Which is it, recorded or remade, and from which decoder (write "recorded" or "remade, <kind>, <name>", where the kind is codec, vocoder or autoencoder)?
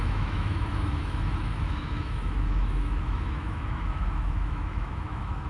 remade, autoencoder, DAC-VAE